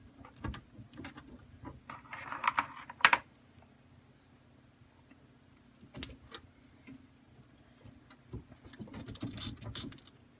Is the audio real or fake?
real